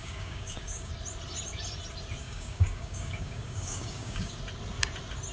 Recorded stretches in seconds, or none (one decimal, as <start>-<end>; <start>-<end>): 0.9-2.2; 4.3-5.3